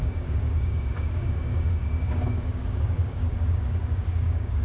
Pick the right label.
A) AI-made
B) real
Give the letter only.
A